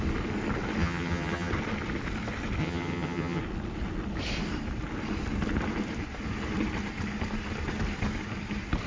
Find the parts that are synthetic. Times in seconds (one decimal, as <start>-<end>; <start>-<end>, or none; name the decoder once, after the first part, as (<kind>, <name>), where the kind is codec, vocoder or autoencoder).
0.8-1.5 (vocoder, HiFi-GAN); 2.6-3.4